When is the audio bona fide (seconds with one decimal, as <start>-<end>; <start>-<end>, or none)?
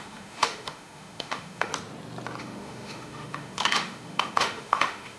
1.7-2.4